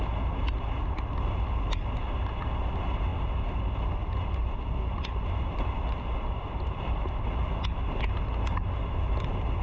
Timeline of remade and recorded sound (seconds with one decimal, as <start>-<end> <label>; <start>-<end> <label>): 0.0-9.6 recorded